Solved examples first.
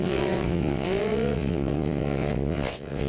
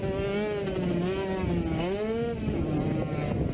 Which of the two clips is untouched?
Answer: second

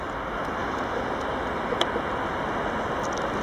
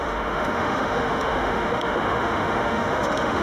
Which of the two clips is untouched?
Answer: first